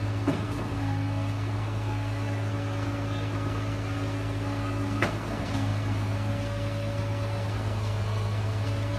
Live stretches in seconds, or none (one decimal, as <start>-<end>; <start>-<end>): none